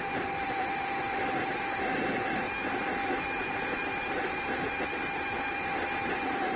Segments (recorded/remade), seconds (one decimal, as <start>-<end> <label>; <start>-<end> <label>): 0.0-6.6 recorded